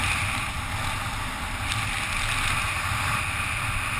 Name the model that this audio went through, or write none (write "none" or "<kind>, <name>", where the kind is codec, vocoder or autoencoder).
none